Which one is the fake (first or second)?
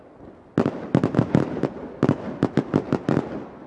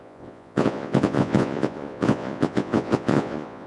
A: second